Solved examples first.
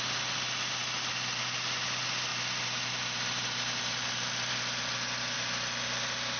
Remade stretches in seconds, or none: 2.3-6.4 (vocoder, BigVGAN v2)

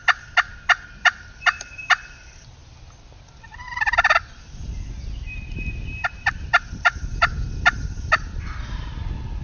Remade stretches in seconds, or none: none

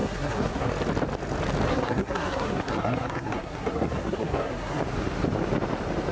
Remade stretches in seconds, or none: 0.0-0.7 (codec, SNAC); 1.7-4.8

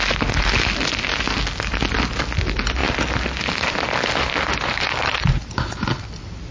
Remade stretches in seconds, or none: 4.5-5.5 (vocoder, BigVGAN v2)